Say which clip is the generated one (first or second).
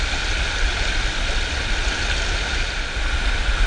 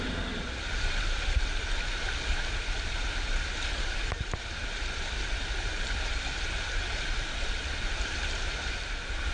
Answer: second